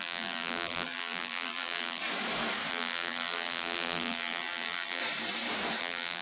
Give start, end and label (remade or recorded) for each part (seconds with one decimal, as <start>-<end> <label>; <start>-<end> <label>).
0.0-2.0 remade; 2.0-2.7 recorded; 2.7-5.0 remade; 5.0-5.8 recorded; 5.8-6.2 remade